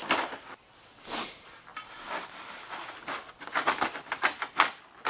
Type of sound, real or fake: real